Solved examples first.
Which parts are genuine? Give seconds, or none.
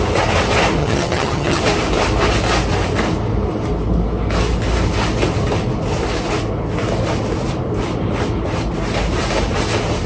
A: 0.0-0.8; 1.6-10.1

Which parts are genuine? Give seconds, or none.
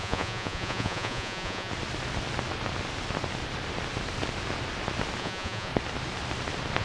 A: 1.7-5.2; 5.7-6.8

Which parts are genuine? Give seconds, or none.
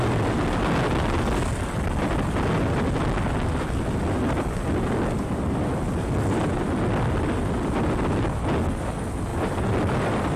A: 0.0-10.4